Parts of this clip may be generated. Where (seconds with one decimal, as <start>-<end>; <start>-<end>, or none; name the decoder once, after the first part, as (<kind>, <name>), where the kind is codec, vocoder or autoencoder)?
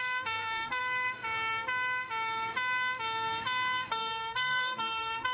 0.0-0.8 (codec, SNAC); 3.9-5.3